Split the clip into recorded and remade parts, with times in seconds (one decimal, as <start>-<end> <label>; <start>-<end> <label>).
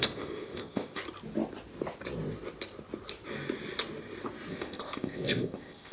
0.0-1.0 remade; 1.0-4.5 recorded; 4.5-5.9 remade